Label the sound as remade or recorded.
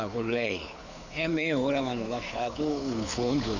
remade